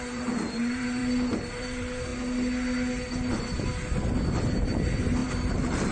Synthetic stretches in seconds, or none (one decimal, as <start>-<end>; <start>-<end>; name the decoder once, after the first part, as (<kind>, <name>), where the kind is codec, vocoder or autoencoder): 0.0-1.0 (vocoder, BigVGAN v2); 1.6-2.1; 3.3-3.7; 4.3-5.9